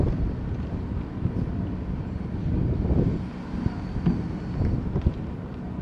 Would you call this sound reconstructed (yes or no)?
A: no